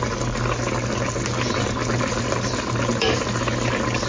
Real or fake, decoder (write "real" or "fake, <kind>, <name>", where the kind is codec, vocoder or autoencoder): real